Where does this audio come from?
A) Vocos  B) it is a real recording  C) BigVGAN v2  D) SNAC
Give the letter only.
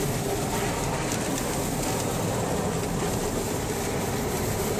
B